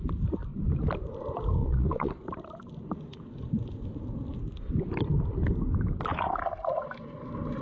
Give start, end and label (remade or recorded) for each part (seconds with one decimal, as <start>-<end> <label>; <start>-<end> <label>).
0.0-1.6 recorded; 1.6-2.1 remade; 2.1-7.6 recorded